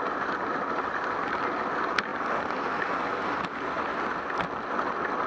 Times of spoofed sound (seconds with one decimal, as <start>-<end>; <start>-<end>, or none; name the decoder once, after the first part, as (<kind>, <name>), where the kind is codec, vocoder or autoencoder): none